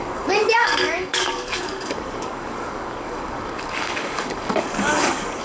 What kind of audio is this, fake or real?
fake